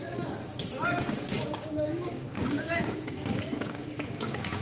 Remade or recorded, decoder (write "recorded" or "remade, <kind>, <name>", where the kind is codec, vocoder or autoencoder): remade, codec, DAC